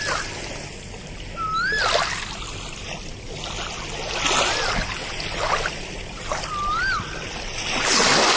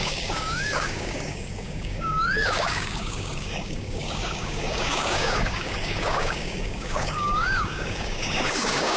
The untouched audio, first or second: first